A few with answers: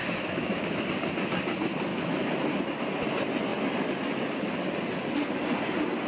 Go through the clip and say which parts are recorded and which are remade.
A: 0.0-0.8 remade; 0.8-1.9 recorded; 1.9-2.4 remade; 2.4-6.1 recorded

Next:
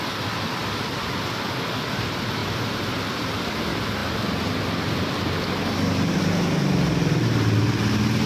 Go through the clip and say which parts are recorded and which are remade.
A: 0.0-8.3 recorded

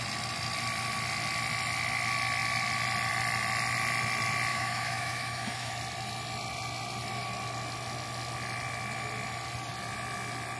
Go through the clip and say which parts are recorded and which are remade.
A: 0.0-4.5 recorded; 4.5-5.7 remade; 5.7-10.6 recorded

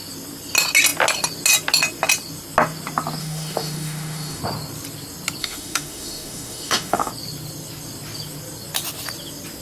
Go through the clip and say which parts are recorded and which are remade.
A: 0.0-3.2 recorded; 3.2-4.4 remade; 4.4-5.4 recorded; 5.4-7.1 remade; 7.1-9.6 recorded